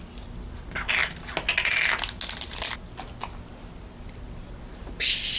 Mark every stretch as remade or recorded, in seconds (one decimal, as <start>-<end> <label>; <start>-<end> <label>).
0.0-5.4 recorded